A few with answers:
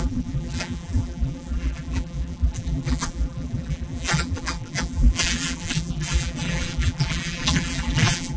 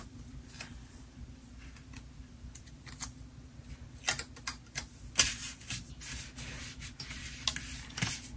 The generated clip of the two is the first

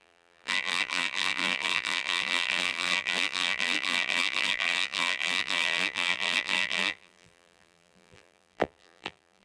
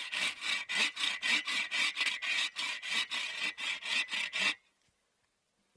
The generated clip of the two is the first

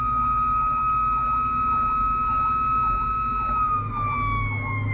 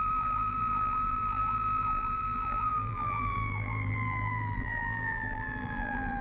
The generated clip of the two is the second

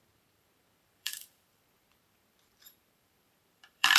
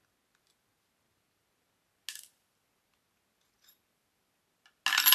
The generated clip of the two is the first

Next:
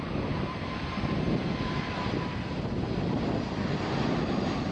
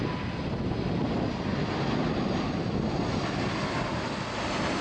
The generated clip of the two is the first